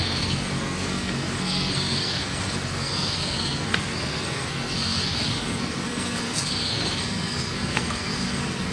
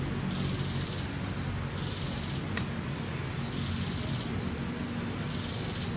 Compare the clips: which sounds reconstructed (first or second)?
first